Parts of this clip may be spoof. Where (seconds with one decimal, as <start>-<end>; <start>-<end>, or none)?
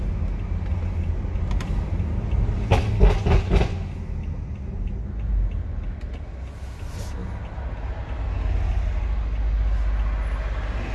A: none